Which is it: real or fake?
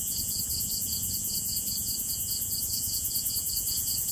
fake